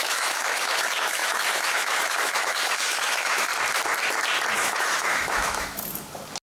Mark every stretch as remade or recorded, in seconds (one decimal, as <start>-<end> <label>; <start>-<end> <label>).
0.0-3.5 remade; 3.5-4.5 recorded; 4.5-5.8 remade; 5.8-6.5 recorded